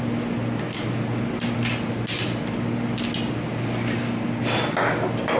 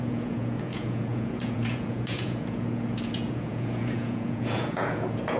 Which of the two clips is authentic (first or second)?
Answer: first